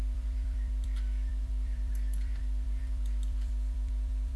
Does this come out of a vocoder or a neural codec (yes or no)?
yes